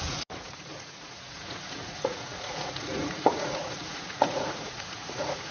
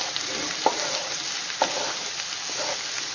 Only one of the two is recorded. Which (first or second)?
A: second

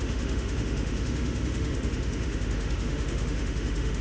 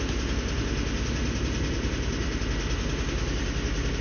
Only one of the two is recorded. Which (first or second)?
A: second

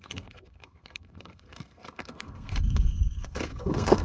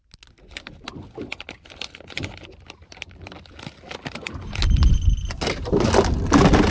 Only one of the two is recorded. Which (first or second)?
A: second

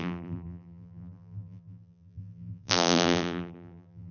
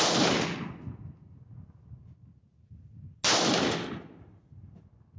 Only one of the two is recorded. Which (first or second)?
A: second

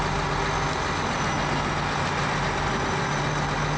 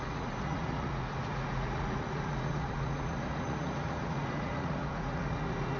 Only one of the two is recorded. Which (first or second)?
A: first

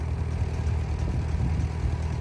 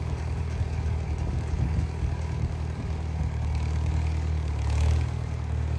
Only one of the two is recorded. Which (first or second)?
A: first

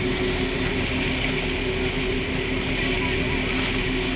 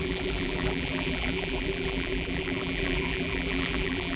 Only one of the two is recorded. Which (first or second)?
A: first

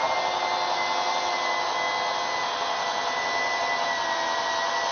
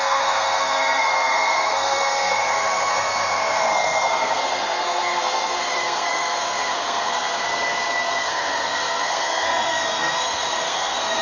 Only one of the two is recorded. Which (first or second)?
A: first